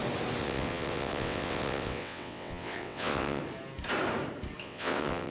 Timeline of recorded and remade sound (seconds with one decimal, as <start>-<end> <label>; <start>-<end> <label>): 0.0-0.4 recorded; 0.4-3.4 remade; 3.4-4.6 recorded; 4.6-5.3 remade